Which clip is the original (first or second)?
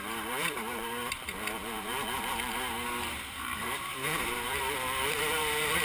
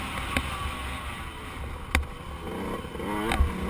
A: second